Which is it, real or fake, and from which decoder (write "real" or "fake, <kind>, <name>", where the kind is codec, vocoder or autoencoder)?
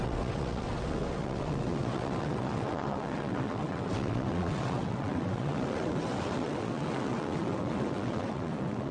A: fake, vocoder, WaveNeXt